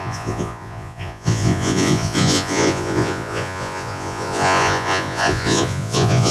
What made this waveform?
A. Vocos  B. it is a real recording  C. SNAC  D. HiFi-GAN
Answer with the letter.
A